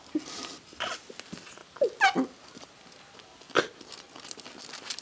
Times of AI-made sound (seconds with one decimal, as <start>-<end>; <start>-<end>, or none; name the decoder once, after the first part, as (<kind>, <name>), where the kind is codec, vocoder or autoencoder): none